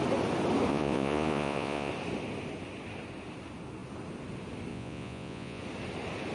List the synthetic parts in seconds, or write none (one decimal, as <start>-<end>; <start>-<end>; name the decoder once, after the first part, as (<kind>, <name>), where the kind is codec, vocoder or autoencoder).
0.7-1.9 (vocoder, Vocos); 4.7-5.6